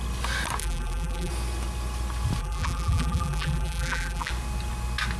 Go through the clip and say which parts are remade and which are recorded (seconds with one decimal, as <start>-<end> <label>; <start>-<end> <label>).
0.0-0.6 recorded; 0.6-1.3 remade; 1.3-2.4 recorded; 2.4-4.3 remade; 4.3-5.2 recorded